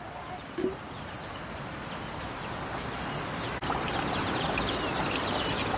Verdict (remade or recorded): recorded